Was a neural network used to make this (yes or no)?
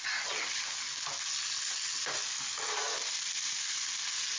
no